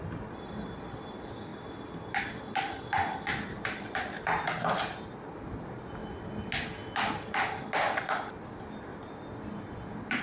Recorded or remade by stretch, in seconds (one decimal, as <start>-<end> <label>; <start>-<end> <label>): 0.0-1.5 recorded; 1.5-2.4 remade; 2.4-10.2 recorded